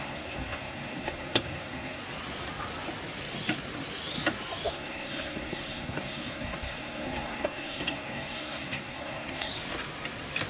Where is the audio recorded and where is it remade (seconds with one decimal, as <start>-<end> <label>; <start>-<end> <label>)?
0.0-2.0 remade; 2.0-4.7 recorded; 4.7-9.5 remade; 9.5-10.5 recorded